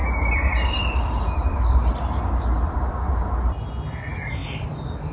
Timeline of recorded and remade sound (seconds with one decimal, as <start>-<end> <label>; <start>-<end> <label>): 0.0-3.1 remade; 3.1-5.1 recorded